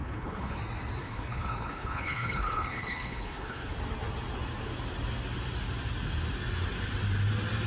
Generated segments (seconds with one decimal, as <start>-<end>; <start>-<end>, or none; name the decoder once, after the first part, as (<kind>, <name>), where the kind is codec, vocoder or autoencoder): 0.0-0.6 (codec, HILCodec); 1.0-3.7